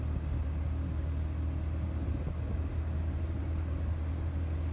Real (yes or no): yes